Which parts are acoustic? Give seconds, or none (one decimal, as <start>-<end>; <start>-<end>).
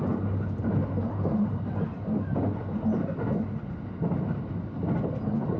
0.0-0.6; 1.7-5.6